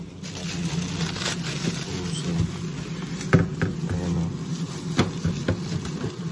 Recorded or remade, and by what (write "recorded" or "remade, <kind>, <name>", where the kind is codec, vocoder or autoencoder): recorded